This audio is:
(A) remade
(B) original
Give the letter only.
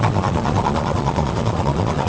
A